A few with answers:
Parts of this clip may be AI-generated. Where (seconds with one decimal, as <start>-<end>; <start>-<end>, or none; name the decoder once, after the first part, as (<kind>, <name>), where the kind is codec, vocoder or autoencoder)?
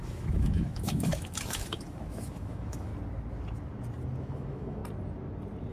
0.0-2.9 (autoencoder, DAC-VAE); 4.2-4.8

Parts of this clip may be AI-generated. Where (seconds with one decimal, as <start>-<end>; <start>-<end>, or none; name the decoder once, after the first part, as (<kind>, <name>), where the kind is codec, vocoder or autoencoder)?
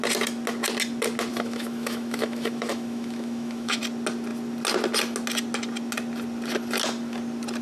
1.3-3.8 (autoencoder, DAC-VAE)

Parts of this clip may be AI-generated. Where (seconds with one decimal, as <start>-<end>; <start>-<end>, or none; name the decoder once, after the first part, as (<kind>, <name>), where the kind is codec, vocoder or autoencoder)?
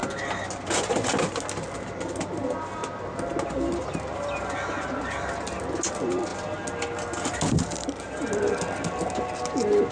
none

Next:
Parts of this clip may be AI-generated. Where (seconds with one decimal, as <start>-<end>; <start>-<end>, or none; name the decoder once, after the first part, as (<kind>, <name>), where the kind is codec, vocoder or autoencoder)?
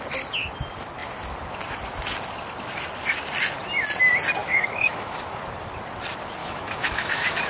4.4-5.2 (autoencoder, DAC-VAE); 6.4-7.5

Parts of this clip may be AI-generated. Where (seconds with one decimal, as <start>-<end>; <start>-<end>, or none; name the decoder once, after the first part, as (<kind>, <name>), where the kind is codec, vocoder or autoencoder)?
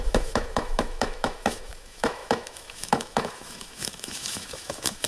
0.0-5.1 (autoencoder, DAC-VAE)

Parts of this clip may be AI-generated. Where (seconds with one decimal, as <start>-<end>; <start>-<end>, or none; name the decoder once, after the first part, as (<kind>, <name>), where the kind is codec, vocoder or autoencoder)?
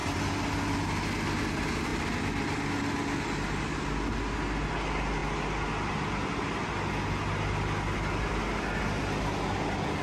none